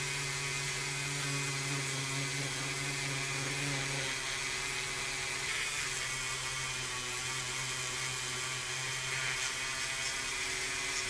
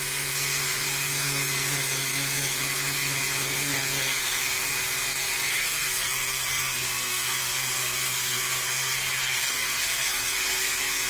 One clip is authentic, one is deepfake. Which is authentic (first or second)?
first